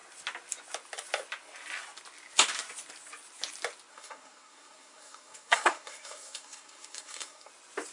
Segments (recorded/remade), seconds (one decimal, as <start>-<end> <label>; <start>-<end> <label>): 0.0-3.9 recorded; 3.9-7.5 remade; 7.5-7.9 recorded